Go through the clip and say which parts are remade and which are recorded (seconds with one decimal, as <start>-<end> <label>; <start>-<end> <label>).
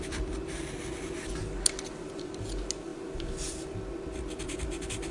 0.0-5.1 recorded